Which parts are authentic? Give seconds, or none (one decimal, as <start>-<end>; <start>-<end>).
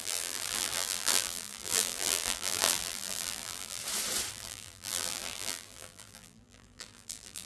3.8-4.3